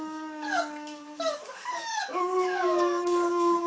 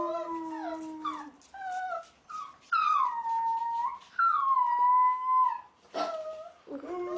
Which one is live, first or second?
second